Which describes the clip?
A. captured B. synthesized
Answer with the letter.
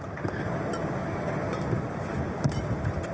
A